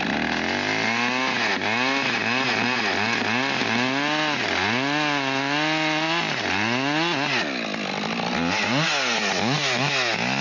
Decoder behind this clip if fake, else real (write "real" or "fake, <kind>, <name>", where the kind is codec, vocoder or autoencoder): real